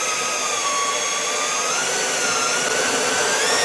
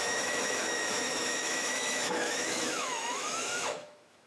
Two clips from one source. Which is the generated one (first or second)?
second